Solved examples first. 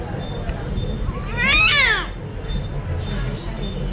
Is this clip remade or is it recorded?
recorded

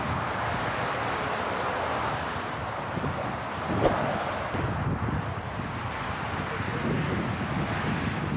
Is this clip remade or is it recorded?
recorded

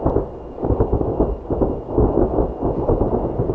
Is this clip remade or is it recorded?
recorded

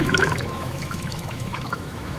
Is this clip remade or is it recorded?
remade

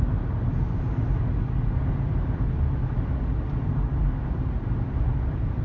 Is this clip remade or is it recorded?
recorded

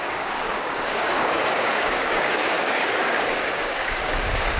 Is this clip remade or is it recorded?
remade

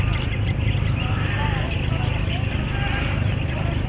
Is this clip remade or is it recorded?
recorded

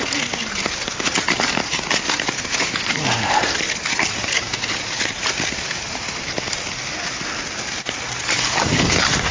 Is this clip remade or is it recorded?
recorded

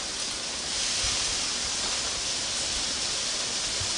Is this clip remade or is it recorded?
recorded